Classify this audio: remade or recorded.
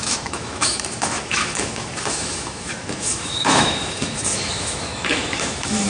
remade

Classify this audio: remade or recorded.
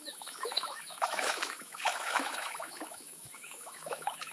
remade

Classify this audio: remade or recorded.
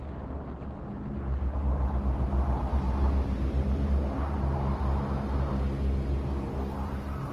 recorded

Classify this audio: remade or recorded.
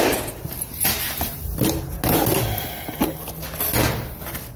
recorded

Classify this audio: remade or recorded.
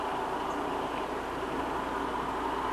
recorded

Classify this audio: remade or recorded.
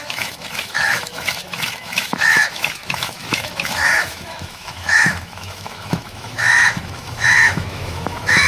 remade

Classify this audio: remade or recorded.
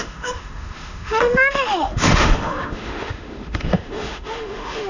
remade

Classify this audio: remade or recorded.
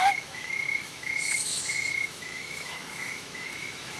remade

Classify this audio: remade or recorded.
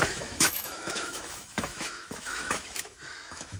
remade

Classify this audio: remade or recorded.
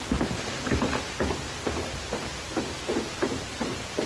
recorded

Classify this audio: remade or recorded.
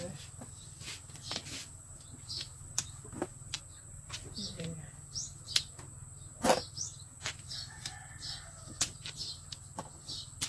recorded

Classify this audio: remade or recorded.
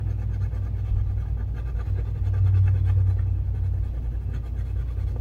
recorded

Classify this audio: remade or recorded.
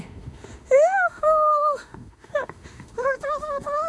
remade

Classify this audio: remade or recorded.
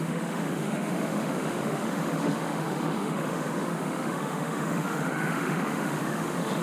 remade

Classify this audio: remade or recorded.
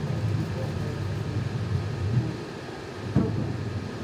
recorded